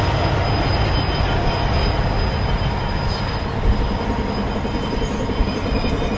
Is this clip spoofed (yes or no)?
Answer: no